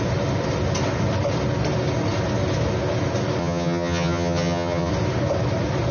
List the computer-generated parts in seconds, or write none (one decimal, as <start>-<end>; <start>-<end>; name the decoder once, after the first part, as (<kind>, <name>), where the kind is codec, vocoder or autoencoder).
3.4-4.9 (vocoder, HiFi-GAN)